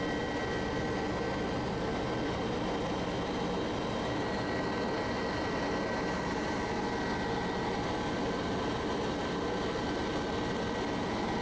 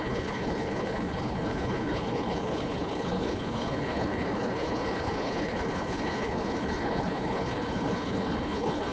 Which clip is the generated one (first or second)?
second